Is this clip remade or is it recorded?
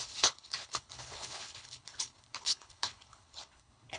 remade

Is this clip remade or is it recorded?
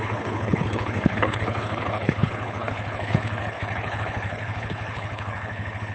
remade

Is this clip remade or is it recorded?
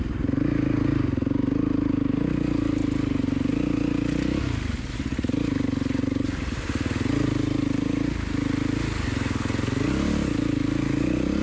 recorded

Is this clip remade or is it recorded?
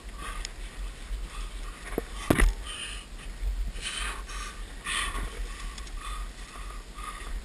recorded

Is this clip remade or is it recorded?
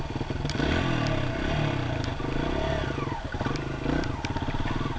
recorded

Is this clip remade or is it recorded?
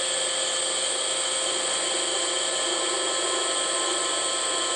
recorded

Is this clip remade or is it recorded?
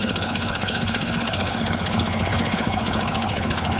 remade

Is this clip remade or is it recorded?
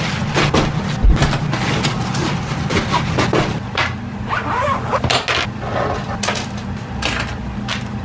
recorded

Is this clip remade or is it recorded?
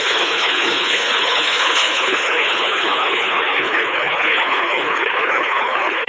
remade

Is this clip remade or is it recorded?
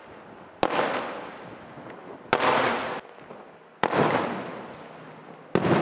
recorded